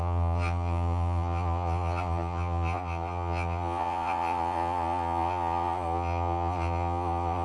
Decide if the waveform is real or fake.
fake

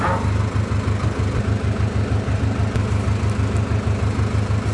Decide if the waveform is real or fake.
real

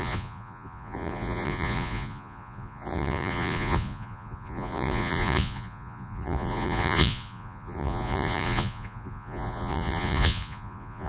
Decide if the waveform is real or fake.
fake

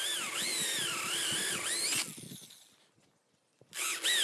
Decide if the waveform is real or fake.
real